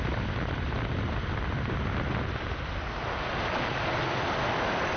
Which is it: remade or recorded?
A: recorded